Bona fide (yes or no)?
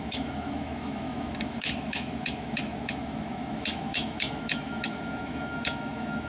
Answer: no